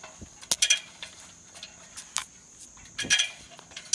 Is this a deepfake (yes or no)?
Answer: no